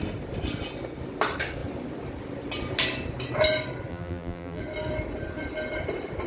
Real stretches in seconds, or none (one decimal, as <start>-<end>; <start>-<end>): 0.0-3.9; 4.6-6.3